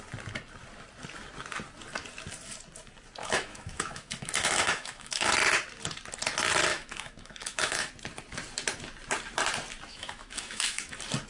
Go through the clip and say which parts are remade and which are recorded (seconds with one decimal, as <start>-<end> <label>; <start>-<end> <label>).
0.0-3.2 recorded; 3.2-5.3 remade; 5.3-6.7 recorded; 6.7-7.9 remade; 7.9-9.9 recorded; 9.9-10.9 remade; 10.9-11.3 recorded